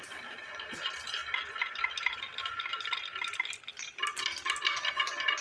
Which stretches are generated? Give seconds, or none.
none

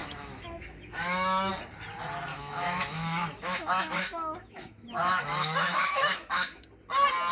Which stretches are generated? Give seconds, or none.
0.0-1.5 (autoencoder, DAC-VAE); 2.3-6.7

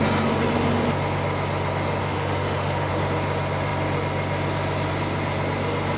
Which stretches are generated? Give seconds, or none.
2.0-2.9 (autoencoder, DAC-VAE)

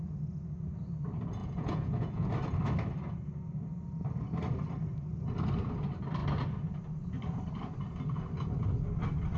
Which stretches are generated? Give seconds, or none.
1.4-2.3 (vocoder, Vocos)

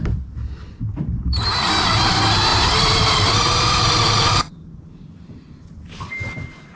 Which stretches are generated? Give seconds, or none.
2.5-6.8 (vocoder, BigVGAN v2)